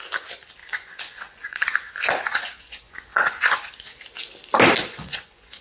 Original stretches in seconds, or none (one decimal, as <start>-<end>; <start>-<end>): 0.0-0.6; 4.0-4.8